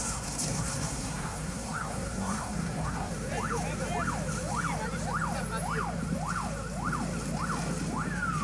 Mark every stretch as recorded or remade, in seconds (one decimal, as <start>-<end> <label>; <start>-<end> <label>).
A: 0.0-3.1 remade; 3.1-8.4 recorded